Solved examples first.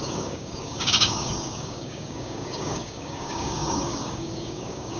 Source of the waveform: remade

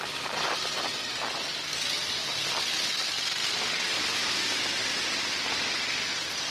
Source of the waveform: recorded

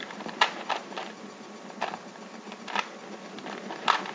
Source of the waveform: recorded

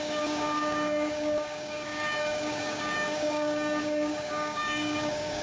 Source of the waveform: remade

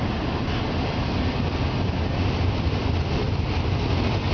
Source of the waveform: recorded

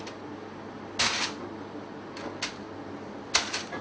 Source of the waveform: recorded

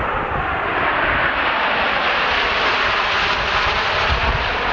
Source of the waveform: recorded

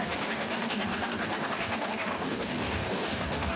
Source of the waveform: remade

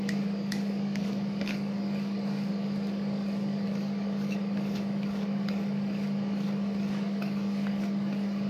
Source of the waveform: remade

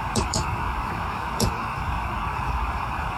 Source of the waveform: remade